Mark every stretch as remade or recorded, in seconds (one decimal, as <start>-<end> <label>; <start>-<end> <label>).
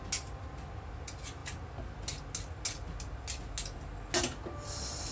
0.0-5.1 recorded